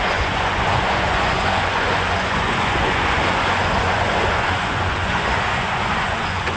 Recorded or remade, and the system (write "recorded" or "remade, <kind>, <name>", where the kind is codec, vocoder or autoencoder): remade, vocoder, Vocos